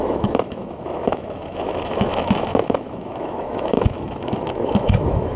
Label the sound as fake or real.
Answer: fake